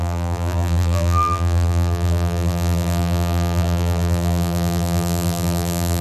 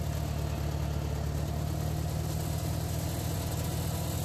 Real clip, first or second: second